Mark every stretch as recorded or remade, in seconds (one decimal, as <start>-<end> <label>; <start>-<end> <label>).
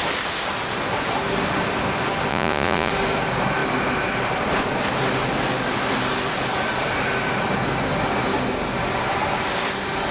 0.0-2.3 recorded; 2.3-2.9 remade; 2.9-10.1 recorded